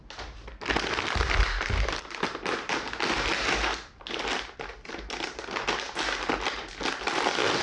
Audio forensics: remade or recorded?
recorded